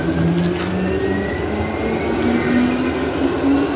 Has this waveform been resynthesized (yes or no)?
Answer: no